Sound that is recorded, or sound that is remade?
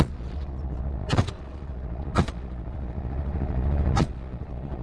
remade